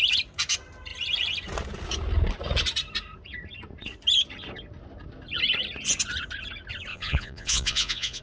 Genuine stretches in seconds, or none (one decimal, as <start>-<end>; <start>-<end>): 0.0-6.9